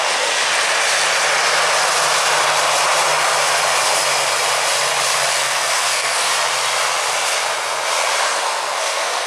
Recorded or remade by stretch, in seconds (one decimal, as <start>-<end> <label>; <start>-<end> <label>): 0.0-0.4 remade; 0.4-5.3 recorded; 5.3-6.3 remade; 6.3-8.2 recorded; 8.2-9.3 remade